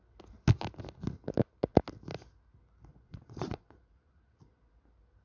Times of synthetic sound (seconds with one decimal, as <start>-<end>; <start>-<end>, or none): 2.9-4.8

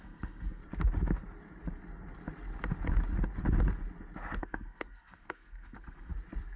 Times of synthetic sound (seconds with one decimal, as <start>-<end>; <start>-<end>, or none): 0.0-0.6; 4.4-6.1

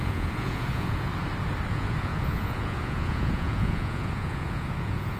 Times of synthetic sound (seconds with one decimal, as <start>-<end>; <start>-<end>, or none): 0.0-1.1; 1.7-5.2

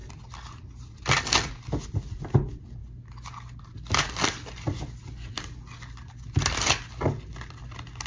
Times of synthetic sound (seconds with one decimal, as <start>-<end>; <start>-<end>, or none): none

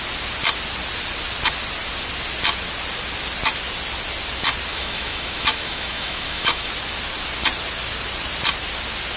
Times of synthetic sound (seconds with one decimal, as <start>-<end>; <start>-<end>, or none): 4.7-6.7